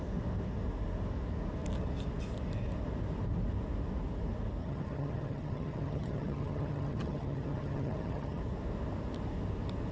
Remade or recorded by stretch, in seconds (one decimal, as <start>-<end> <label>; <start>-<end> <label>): 0.0-4.6 recorded; 4.6-8.4 remade; 8.4-9.9 recorded